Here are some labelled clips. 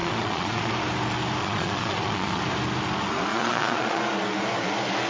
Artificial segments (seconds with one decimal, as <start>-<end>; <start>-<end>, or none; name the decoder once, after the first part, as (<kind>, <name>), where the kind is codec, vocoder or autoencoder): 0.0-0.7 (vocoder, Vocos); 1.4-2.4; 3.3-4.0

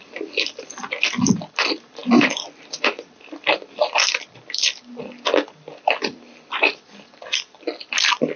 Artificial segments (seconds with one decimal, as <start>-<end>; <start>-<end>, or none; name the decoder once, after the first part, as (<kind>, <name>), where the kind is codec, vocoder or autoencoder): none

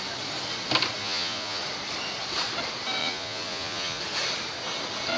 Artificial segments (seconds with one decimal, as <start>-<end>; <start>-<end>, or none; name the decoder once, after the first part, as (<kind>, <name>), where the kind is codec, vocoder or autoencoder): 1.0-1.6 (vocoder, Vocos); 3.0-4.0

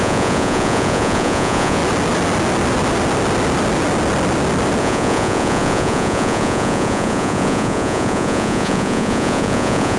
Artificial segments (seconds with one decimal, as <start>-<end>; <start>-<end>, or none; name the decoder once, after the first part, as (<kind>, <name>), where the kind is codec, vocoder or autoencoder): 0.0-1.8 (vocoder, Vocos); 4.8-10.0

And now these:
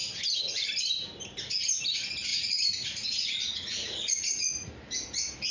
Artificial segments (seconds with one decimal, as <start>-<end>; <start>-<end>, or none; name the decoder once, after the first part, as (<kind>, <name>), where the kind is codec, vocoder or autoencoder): 2.3-4.7 (vocoder, Vocos)